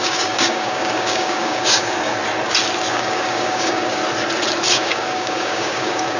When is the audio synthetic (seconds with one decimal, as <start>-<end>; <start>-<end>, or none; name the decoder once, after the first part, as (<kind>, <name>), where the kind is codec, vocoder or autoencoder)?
0.0-2.1 (codec, DAC); 2.9-4.0; 4.7-6.2